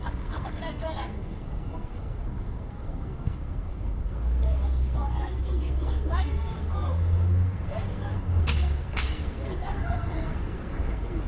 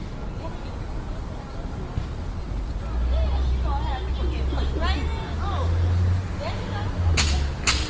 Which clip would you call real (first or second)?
second